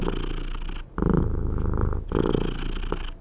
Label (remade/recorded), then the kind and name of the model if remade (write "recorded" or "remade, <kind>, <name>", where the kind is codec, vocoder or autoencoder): recorded